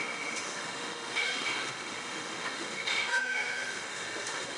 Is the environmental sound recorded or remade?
remade